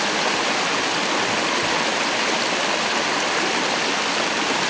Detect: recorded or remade remade